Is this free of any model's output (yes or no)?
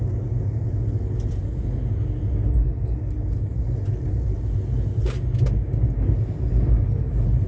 yes